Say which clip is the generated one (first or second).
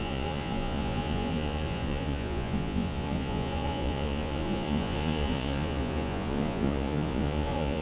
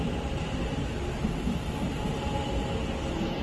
first